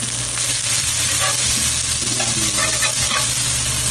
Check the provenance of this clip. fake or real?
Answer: real